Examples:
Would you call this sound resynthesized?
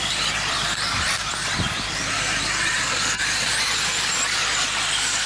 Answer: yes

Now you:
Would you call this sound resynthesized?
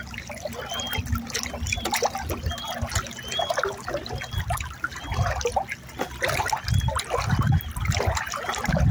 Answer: no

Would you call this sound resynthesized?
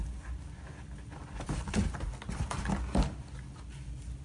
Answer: no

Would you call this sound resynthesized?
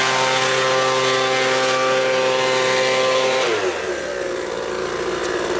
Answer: no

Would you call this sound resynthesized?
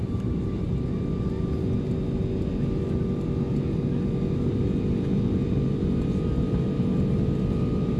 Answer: no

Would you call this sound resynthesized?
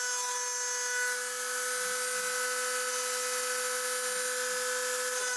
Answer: no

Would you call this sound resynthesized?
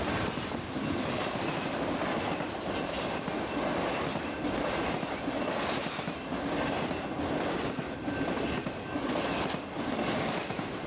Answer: no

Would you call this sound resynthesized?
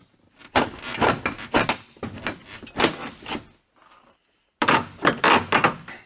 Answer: no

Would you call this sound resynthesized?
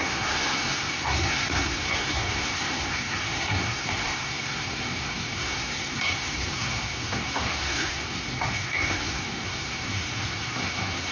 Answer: yes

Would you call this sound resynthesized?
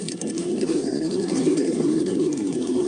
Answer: yes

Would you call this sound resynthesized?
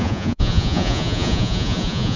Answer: yes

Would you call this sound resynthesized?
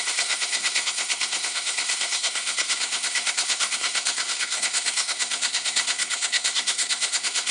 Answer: yes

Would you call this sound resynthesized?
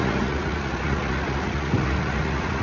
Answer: yes